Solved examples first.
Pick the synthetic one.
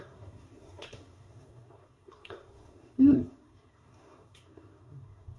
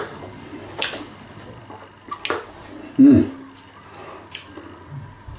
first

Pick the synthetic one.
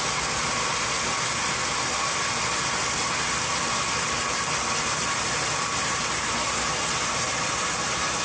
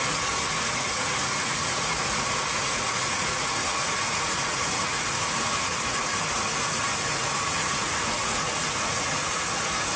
second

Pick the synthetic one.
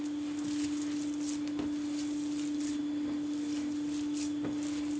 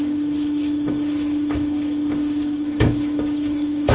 second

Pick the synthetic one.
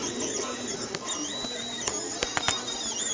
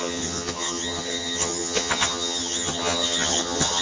second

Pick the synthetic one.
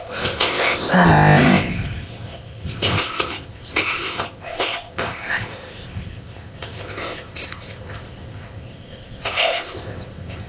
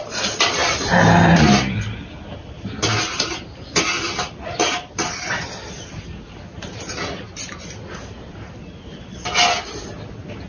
first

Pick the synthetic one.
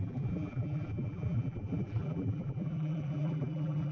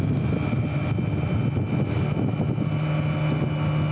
first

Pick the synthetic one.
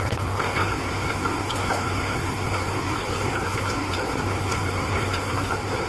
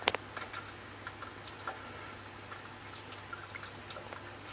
first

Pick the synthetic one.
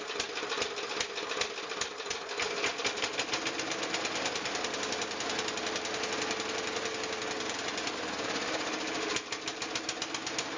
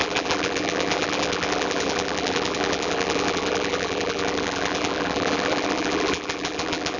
second